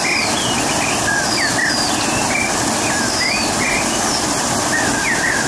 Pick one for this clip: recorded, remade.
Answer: recorded